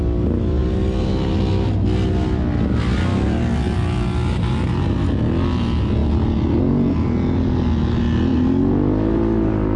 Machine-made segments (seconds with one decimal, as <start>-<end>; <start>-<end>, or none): none